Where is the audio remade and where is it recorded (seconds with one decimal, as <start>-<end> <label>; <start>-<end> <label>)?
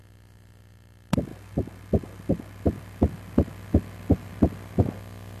0.0-5.4 recorded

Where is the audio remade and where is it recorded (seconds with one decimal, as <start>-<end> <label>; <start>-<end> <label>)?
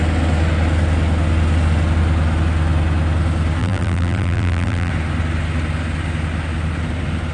0.0-3.6 recorded; 3.6-4.9 remade; 4.9-7.3 recorded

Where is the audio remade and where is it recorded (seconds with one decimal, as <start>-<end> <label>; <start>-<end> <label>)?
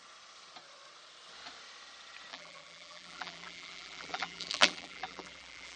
0.0-2.3 recorded; 2.3-5.8 remade